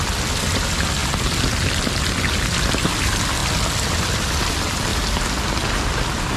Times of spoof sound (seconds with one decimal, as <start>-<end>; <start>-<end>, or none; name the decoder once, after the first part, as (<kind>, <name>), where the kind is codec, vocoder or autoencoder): none